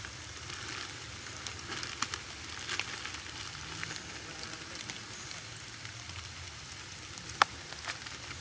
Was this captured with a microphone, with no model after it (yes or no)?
yes